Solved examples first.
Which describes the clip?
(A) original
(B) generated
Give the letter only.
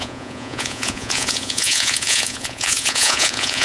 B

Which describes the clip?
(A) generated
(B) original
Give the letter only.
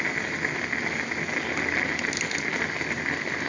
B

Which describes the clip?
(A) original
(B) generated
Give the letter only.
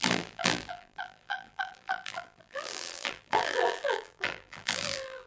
B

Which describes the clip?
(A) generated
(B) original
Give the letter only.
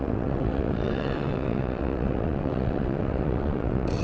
A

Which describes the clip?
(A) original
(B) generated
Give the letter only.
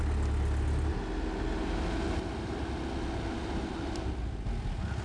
A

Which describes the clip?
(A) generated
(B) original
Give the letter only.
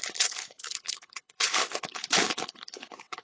A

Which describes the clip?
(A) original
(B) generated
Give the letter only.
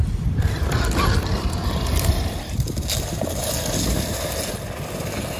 A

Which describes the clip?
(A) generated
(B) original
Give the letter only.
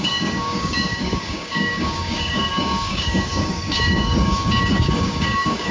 A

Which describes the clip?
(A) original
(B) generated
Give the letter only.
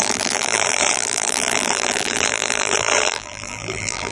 B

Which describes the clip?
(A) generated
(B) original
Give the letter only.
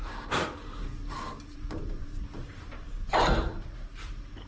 A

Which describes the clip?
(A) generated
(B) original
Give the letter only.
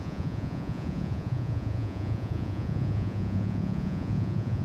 A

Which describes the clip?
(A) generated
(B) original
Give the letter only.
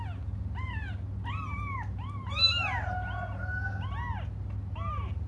B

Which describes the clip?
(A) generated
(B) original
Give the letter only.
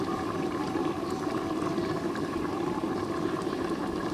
A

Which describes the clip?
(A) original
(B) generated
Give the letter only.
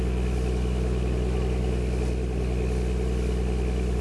A